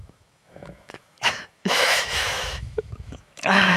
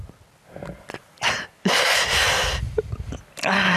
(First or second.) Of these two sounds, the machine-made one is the first